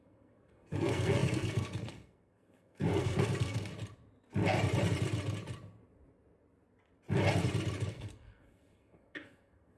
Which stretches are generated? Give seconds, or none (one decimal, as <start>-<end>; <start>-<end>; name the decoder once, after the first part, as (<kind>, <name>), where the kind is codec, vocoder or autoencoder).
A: 0.0-3.7 (codec, SNAC); 7.9-9.8